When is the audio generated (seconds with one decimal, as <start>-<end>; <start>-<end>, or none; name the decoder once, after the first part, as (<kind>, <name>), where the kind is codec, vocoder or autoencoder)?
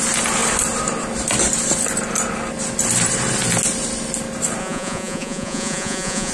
4.6-6.3 (vocoder, Vocos)